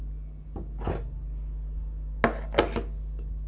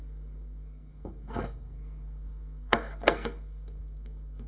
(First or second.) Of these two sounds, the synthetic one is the second